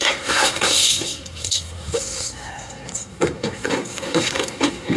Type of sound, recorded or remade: remade